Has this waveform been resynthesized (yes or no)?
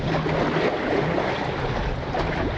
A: no